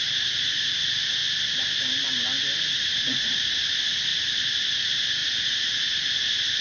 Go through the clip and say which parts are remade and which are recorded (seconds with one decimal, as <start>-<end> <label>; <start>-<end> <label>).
0.0-1.2 remade; 1.2-2.8 recorded; 2.8-4.1 remade; 4.1-4.7 recorded; 4.7-6.6 remade